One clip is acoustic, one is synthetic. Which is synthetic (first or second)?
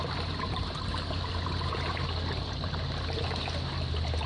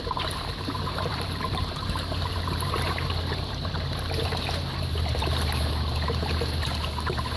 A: second